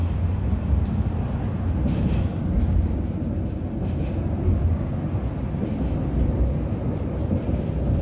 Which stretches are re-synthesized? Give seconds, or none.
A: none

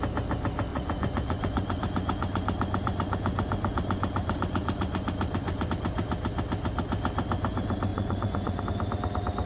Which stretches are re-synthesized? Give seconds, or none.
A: 0.7-5.7 (vocoder, Vocos); 7.9-8.6

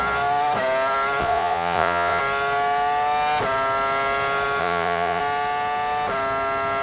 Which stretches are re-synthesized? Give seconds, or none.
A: 1.2-2.2 (vocoder, Vocos); 4.6-5.2